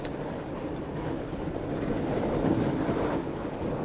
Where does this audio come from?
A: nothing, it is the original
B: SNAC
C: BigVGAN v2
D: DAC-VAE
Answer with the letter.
A